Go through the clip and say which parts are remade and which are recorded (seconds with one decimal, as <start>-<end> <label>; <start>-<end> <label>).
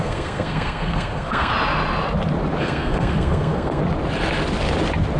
0.0-1.5 remade; 1.5-2.6 recorded; 2.6-3.8 remade; 3.8-5.2 recorded